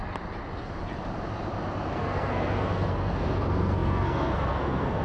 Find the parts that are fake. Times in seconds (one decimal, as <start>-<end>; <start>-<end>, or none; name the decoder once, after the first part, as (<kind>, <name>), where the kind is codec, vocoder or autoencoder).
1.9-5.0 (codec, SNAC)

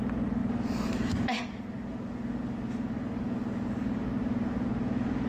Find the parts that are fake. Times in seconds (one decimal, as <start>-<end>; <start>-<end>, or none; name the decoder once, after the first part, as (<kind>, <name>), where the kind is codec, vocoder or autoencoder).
none

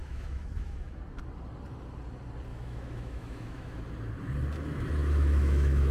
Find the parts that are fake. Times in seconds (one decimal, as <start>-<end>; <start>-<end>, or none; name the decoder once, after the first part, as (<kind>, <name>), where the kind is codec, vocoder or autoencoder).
0.0-0.9 (autoencoder, DAC-VAE); 2.5-3.8; 5.0-5.9

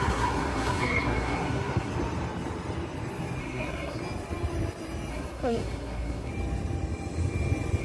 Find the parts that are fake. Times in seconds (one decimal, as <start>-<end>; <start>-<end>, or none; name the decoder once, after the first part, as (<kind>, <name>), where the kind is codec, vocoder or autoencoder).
0.0-1.9 (codec, SNAC); 3.4-4.0; 5.1-6.3

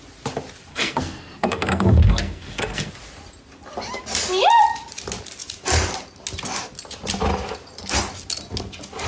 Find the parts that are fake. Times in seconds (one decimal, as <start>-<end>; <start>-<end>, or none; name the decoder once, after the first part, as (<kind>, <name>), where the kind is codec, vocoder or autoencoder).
0.7-2.9 (codec, SNAC)